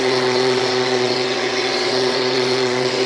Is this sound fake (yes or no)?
yes